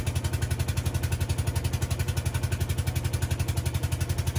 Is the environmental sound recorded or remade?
recorded